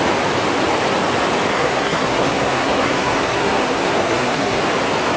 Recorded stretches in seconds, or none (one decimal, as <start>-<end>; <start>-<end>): 0.0-1.5; 4.6-5.2